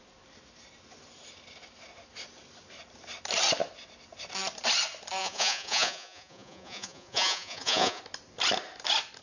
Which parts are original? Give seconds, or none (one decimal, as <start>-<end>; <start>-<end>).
0.0-5.2; 8.0-9.2